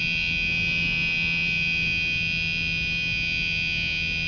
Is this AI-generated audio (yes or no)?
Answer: no